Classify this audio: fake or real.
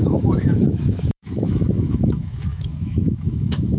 fake